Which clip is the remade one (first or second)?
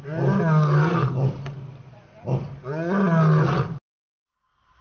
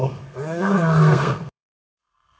second